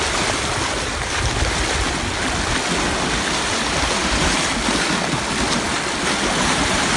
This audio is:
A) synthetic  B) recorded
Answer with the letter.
B